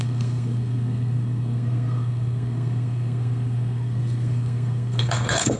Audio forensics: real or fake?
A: fake